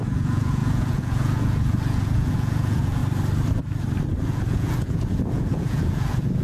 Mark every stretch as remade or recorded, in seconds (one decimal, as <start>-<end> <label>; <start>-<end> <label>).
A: 0.0-3.0 remade; 3.0-4.2 recorded; 4.2-6.4 remade